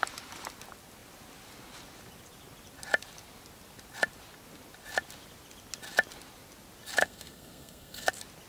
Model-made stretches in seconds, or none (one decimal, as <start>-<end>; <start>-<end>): 7.0-8.1